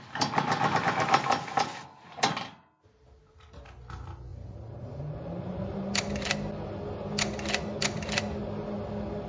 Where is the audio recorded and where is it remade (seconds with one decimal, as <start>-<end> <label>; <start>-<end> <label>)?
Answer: 0.0-9.3 recorded